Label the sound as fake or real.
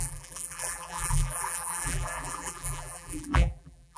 fake